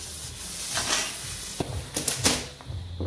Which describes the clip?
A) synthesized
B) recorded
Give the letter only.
B